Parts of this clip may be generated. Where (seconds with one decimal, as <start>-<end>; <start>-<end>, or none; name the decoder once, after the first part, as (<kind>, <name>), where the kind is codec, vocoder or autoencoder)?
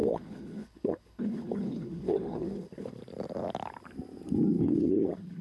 0.0-3.0 (codec, HILCodec); 4.6-5.4